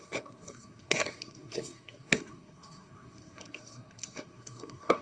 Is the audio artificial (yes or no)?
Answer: yes